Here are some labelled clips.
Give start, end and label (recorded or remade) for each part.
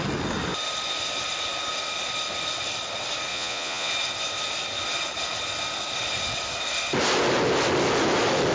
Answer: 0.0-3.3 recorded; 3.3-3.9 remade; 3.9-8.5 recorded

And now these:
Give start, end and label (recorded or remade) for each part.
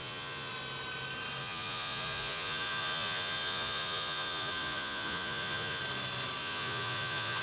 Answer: 0.0-0.5 remade; 0.5-1.4 recorded; 1.4-5.8 remade; 5.8-6.4 recorded; 6.4-7.4 remade